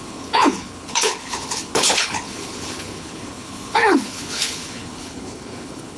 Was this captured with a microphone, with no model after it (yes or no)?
no